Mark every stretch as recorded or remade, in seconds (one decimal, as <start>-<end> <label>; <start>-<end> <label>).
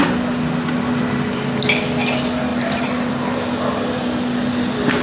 0.0-2.5 recorded; 2.5-3.1 remade; 3.1-5.0 recorded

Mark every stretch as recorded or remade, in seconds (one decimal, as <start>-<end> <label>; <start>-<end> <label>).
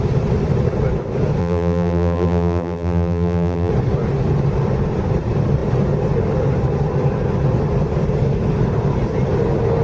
0.0-1.4 recorded; 1.4-3.7 remade; 3.7-9.8 recorded